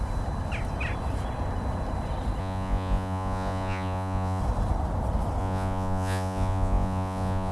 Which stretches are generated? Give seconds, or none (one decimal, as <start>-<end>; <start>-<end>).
2.4-4.4; 5.4-7.5